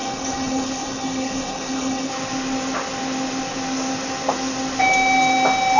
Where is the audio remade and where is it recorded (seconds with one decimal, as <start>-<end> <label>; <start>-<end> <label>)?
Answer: 0.0-2.1 remade; 2.1-5.8 recorded